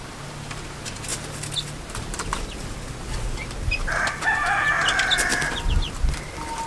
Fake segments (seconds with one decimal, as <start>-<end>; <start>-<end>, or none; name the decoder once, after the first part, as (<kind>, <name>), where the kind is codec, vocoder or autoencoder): none